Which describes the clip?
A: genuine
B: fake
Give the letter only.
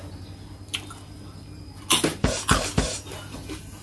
A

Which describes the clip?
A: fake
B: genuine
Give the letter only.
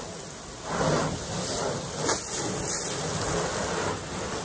B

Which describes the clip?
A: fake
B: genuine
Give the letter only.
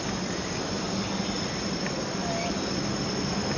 B